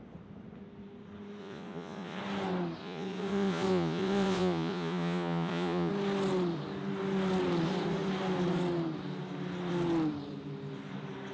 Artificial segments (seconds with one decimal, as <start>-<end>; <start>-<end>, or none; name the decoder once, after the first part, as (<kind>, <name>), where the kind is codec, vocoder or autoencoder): 1.4-2.2 (vocoder, Vocos); 2.8-5.9